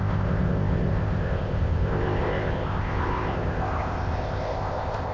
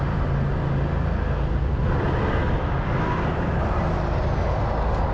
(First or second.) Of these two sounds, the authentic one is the second